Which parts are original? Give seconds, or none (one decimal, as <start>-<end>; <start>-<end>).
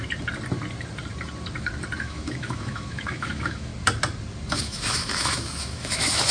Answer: 0.0-2.0; 3.7-4.5